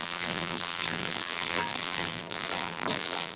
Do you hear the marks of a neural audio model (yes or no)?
yes